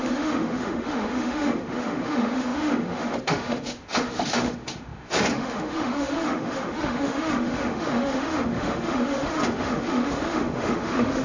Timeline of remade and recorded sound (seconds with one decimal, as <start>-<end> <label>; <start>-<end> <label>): 0.0-11.2 remade